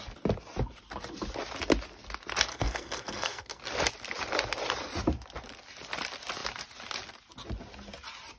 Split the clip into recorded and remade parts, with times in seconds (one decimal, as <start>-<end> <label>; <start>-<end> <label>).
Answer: 0.0-2.5 recorded; 2.5-3.6 remade; 3.6-8.4 recorded